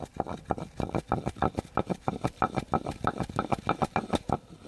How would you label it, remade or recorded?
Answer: recorded